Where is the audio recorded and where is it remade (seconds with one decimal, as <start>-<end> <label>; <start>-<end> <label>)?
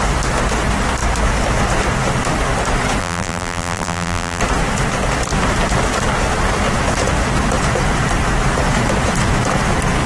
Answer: 0.0-3.0 recorded; 3.0-4.4 remade; 4.4-10.1 recorded